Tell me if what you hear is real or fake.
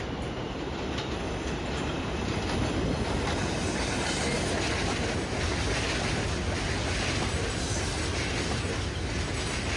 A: real